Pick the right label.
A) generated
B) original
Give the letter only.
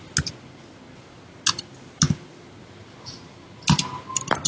B